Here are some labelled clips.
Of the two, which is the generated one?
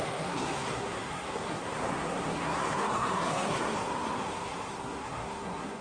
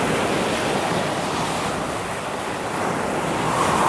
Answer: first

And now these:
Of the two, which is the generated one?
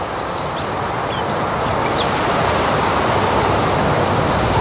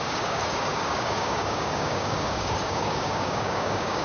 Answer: second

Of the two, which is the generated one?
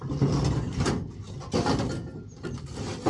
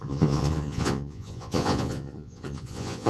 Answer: second